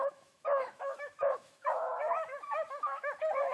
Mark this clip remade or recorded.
remade